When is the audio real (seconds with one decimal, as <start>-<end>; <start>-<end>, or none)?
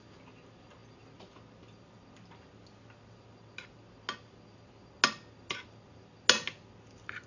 0.0-7.3